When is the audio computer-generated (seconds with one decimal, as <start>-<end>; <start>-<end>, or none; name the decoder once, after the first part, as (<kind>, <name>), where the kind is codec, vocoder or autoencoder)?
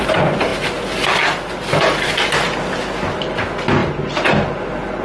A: none